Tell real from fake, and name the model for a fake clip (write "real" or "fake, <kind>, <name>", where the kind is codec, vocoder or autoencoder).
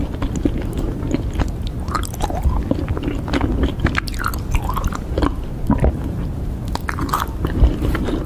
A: real